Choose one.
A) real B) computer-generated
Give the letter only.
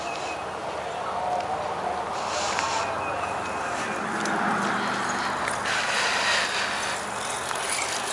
A